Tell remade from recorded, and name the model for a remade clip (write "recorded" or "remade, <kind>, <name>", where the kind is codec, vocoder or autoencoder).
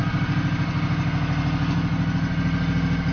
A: recorded